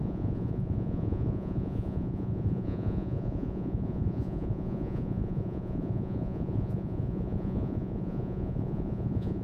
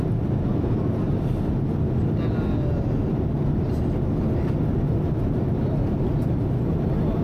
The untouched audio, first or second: second